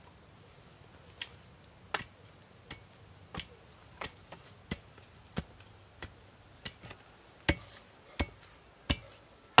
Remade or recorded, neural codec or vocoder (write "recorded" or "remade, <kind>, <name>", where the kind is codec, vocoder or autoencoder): recorded